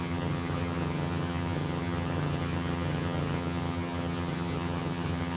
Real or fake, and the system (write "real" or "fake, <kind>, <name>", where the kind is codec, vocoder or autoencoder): fake, vocoder, HiFi-GAN